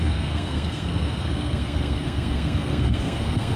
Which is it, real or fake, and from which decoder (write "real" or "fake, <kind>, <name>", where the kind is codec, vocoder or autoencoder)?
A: fake, codec, SNAC